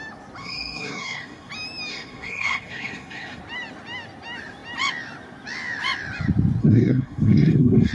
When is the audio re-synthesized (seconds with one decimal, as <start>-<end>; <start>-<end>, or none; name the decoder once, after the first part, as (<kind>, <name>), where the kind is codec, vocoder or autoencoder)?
0.4-1.5 (codec, SNAC); 1.9-3.4; 6.6-7.9